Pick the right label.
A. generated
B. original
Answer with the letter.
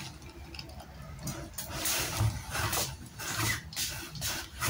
B